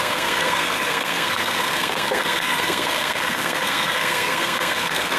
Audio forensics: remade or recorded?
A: remade